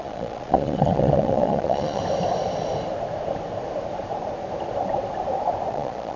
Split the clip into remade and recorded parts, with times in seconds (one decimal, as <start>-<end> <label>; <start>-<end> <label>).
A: 0.0-2.0 remade; 2.0-5.7 recorded; 5.7-6.2 remade